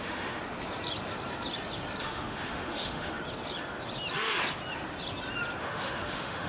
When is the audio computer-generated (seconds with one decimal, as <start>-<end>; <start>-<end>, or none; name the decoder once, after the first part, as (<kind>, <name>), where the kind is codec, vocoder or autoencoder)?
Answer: 0.0-0.4 (autoencoder, DAC-VAE); 2.0-3.2; 5.6-6.5